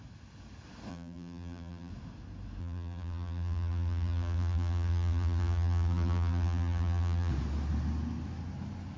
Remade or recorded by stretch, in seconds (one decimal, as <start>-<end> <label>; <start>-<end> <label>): 0.0-0.9 recorded; 0.9-1.9 remade; 1.9-2.6 recorded; 2.6-7.3 remade; 7.3-9.0 recorded